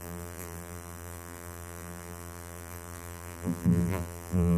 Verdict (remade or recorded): remade